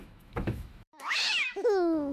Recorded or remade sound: remade